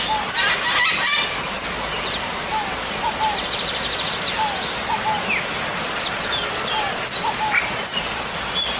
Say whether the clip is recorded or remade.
recorded